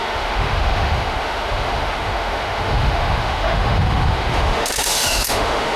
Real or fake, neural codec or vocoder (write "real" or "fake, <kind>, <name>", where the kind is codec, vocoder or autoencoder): fake, autoencoder, DAC-VAE